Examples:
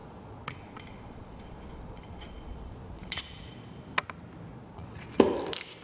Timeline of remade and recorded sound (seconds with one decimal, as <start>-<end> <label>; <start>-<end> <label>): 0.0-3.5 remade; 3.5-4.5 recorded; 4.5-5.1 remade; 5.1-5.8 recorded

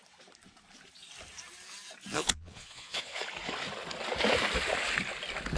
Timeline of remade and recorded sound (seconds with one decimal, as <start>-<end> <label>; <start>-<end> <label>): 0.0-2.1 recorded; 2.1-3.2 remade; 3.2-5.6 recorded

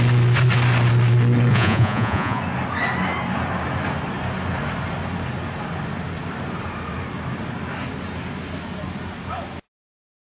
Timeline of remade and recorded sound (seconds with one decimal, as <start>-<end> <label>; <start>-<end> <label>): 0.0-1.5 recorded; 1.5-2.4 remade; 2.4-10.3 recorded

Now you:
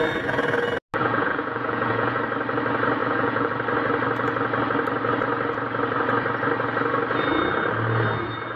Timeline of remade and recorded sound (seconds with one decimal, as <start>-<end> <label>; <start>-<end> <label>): 0.0-1.0 recorded; 1.0-2.2 remade; 2.2-3.0 recorded; 3.0-3.5 remade; 3.5-8.6 recorded

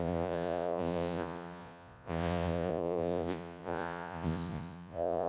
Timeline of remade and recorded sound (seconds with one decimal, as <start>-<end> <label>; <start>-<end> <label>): 0.0-5.3 remade

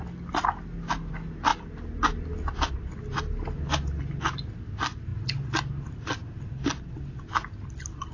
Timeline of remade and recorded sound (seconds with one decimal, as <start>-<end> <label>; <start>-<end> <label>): 0.0-8.1 recorded

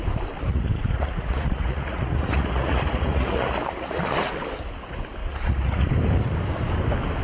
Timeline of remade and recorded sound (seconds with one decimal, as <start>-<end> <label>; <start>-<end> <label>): 0.0-0.5 recorded; 0.5-4.4 remade; 4.4-5.2 recorded; 5.2-5.9 remade; 5.9-7.2 recorded